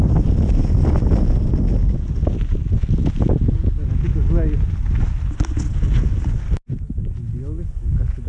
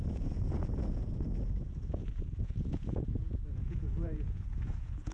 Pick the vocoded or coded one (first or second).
second